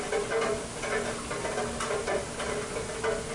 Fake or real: real